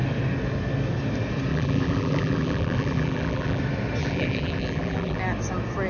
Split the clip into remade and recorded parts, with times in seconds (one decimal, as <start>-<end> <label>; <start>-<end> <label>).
0.0-1.5 recorded; 1.5-3.6 remade; 3.6-4.0 recorded; 4.0-5.2 remade; 5.2-5.9 recorded